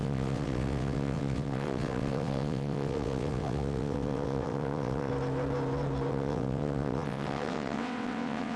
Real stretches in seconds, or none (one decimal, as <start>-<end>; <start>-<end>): 5.1-6.1